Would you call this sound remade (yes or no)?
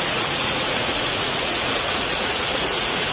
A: yes